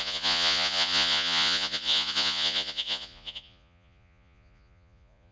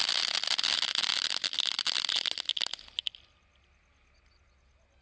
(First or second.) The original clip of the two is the second